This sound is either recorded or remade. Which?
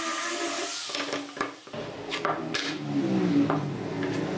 recorded